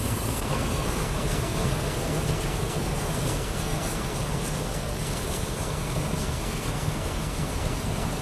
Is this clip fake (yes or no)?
yes